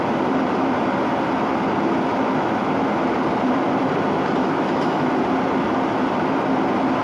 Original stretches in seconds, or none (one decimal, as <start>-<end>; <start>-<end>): 0.0-2.1; 2.7-4.4; 5.2-7.0